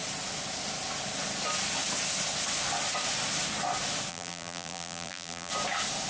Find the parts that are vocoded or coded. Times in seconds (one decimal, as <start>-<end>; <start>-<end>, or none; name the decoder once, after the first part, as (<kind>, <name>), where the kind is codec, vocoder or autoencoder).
4.1-5.5 (vocoder, BigVGAN v2)